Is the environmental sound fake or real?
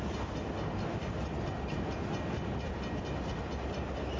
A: real